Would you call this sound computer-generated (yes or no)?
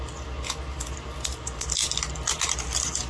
no